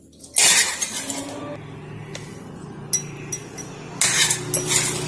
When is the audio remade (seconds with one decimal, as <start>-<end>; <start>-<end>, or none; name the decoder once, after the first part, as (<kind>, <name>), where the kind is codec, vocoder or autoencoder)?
none